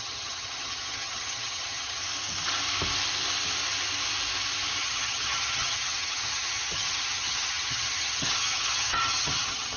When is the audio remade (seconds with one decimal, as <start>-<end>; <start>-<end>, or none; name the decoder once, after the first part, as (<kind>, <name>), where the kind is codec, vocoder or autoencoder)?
0.0-2.0 (vocoder, HiFi-GAN); 4.8-9.8